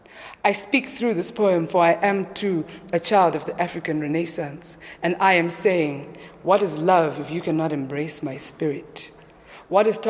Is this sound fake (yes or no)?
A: no